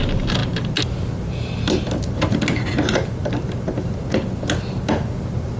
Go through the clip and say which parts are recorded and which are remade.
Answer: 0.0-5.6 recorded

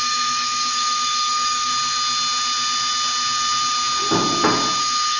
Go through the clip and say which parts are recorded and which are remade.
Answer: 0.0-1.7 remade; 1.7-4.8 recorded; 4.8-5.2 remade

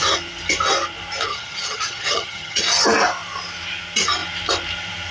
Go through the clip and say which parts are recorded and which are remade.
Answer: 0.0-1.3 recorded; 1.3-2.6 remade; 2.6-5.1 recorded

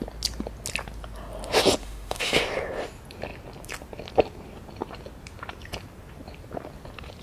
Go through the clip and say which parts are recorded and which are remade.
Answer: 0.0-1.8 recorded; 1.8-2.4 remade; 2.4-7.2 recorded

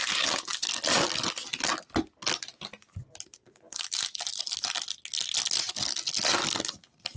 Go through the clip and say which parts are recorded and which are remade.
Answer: 0.0-7.2 recorded